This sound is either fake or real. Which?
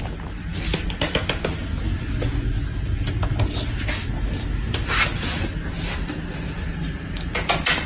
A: real